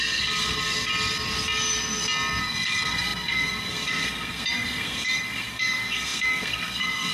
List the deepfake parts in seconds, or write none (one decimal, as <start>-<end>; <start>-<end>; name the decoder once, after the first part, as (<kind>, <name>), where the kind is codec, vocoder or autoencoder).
0.0-0.9 (codec, SNAC); 2.4-7.1